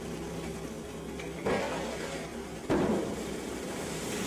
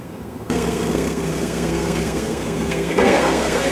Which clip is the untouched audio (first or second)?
first